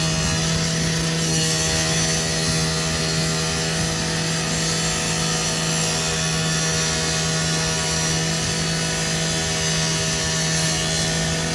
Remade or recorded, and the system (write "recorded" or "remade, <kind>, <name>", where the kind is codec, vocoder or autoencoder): recorded